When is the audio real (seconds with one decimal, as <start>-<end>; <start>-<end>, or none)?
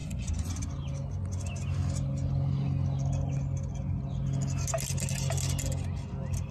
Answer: 0.6-6.5